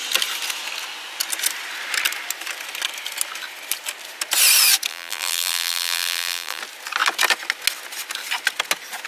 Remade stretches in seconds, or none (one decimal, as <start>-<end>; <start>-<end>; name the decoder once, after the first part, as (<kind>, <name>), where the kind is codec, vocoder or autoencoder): 4.9-6.6 (vocoder, BigVGAN v2)